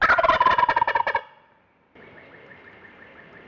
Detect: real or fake real